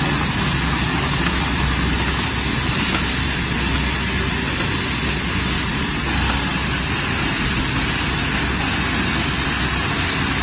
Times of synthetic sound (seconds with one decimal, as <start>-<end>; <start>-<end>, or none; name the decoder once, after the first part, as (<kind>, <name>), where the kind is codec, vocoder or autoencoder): 0.9-1.7 (vocoder, BigVGAN v2)